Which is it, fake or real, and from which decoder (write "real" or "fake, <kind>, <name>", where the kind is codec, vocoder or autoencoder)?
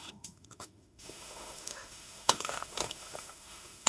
fake, autoencoder, DAC-VAE